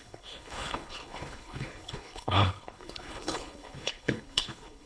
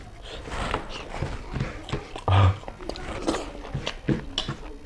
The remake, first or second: first